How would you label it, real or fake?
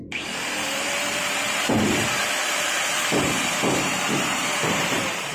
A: fake